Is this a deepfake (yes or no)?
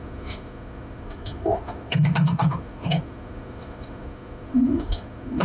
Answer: yes